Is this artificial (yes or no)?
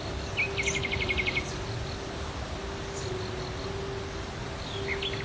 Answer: no